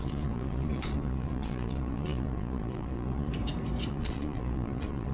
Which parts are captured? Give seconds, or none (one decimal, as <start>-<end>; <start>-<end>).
3.3-3.9

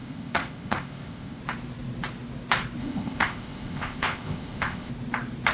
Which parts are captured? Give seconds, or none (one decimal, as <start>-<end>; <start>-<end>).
1.4-2.8; 4.9-5.5

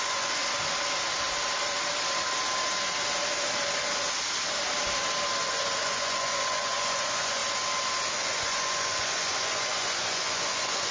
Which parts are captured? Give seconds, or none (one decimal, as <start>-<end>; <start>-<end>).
0.4-5.5; 7.4-8.1